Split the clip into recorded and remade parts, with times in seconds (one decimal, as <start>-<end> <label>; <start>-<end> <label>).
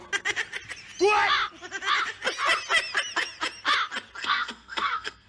0.0-4.2 recorded; 4.2-5.3 remade